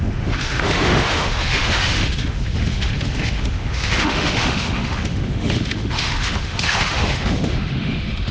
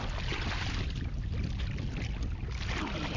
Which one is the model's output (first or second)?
first